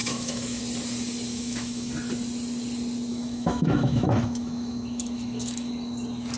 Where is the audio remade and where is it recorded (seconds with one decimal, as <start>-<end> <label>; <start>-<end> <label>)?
0.0-0.6 remade; 0.6-1.3 recorded; 1.3-1.9 remade; 1.9-3.1 recorded; 3.1-5.7 remade; 5.7-6.4 recorded